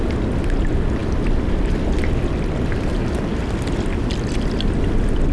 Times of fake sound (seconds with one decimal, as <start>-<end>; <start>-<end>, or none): none